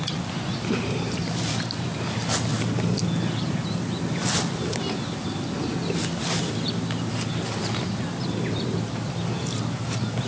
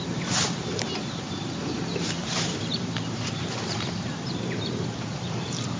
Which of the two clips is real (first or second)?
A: first